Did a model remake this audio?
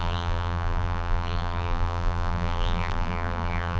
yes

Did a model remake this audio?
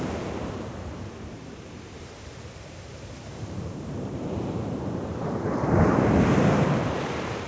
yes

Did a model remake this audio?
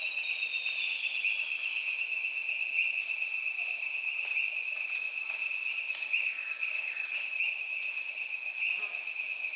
no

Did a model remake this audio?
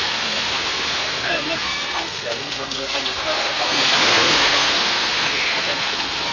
yes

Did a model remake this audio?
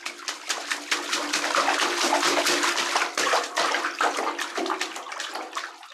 no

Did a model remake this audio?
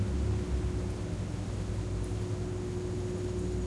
no